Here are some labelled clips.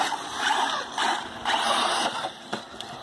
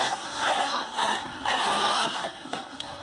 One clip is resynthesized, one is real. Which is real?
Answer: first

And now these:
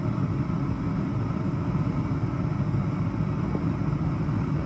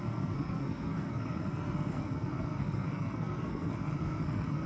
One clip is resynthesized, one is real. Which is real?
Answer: first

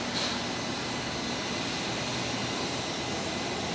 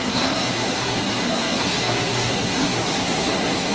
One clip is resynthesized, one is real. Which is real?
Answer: first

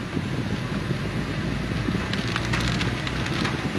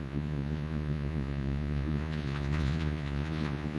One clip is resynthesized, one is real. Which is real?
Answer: first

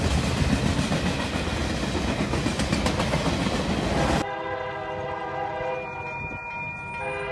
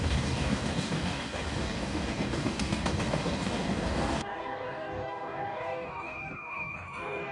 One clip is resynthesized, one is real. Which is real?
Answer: first